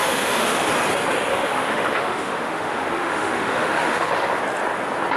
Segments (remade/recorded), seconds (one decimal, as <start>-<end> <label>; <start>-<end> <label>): 0.0-0.7 remade; 0.7-1.3 recorded; 1.3-4.4 remade; 4.4-5.2 recorded